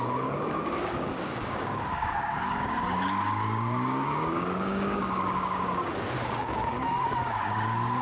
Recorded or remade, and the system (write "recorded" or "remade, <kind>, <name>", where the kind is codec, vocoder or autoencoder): remade, codec, DAC